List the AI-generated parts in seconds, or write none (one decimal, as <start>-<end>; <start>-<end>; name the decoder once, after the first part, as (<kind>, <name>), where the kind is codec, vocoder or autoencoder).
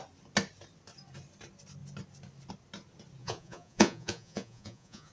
3.2-5.1 (vocoder, Vocos)